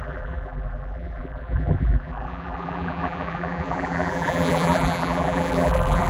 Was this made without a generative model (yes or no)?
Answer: no